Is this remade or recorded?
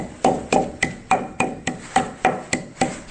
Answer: recorded